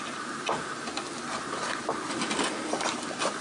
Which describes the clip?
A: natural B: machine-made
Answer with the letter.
A